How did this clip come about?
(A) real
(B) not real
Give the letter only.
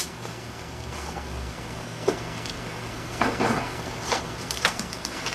B